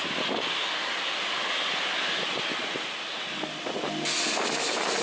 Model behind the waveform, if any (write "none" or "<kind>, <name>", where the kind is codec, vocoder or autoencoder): none